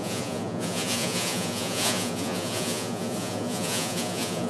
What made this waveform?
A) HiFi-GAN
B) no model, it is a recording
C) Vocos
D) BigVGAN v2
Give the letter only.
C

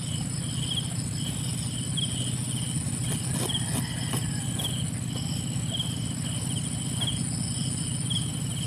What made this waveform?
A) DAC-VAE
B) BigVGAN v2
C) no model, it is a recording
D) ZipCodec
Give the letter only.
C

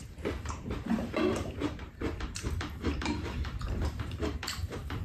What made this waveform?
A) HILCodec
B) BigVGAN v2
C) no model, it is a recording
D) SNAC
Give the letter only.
B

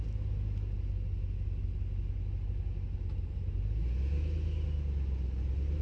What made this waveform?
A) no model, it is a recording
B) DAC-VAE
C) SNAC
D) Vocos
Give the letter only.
A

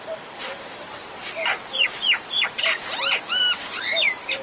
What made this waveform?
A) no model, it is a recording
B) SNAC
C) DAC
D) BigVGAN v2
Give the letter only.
D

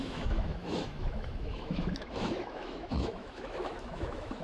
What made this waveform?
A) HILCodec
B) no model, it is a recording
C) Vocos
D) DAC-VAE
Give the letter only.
D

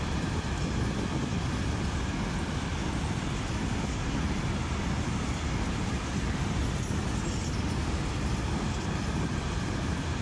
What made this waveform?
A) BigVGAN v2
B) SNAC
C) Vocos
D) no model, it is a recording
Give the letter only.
D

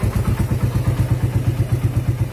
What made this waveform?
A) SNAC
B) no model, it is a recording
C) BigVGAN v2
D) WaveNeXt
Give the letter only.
B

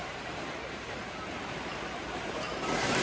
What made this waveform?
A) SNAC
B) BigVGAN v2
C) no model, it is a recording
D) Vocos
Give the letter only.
B